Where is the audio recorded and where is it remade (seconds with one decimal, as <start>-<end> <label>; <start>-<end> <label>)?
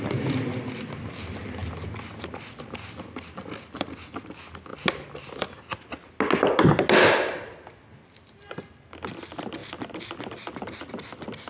0.0-11.5 recorded